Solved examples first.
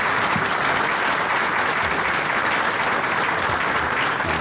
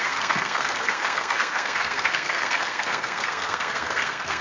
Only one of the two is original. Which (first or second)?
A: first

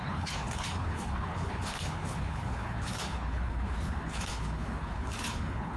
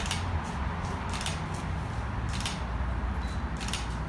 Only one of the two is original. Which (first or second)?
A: second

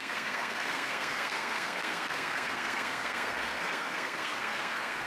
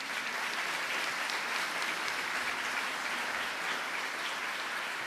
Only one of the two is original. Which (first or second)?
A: second